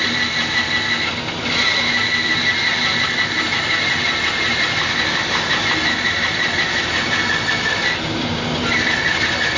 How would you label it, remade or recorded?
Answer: recorded